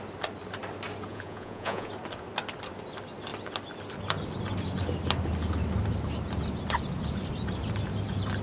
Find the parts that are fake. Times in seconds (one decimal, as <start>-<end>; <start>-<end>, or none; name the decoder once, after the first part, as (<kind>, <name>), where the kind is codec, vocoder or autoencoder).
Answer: 1.1-1.9 (vocoder, Vocos)

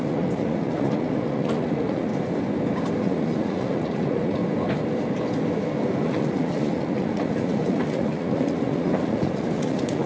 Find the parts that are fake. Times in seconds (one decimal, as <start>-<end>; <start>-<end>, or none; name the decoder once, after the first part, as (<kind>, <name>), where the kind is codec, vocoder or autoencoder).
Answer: 0.0-2.1 (vocoder, Vocos); 3.0-4.4; 6.0-10.1

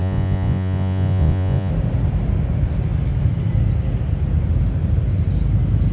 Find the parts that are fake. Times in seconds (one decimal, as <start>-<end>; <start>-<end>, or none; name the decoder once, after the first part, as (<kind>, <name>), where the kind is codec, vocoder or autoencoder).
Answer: 0.0-1.7 (vocoder, Vocos)

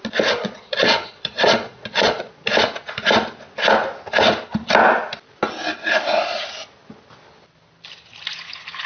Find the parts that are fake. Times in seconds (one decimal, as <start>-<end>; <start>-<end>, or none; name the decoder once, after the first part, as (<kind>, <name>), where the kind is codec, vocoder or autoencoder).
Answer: 0.4-2.3 (vocoder, Vocos)

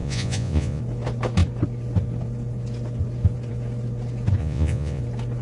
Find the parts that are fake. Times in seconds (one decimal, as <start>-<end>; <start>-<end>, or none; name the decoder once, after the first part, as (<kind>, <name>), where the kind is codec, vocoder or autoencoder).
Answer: 0.0-0.8 (vocoder, Vocos); 4.4-5.0

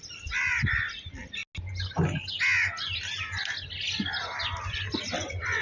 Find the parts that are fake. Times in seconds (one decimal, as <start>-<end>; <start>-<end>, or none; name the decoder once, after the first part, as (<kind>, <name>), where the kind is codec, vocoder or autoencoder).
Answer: none